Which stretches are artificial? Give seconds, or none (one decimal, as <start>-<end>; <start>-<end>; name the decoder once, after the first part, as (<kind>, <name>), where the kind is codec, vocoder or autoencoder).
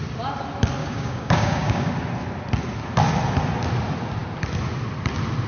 0.8-1.9 (codec, DAC)